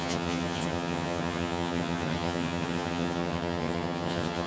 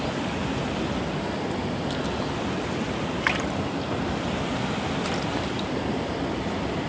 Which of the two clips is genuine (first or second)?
second